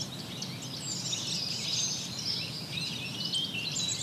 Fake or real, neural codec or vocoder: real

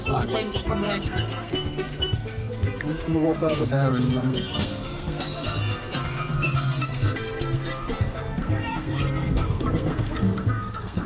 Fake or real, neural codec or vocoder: fake, codec, SNAC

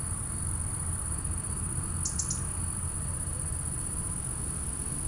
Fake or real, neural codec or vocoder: real